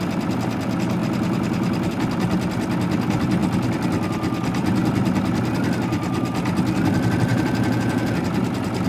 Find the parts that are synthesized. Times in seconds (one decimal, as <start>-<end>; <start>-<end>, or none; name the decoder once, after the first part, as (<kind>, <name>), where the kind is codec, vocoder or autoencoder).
7.3-8.2 (vocoder, Vocos)